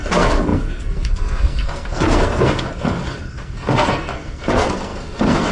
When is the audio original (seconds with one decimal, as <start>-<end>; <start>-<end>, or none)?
none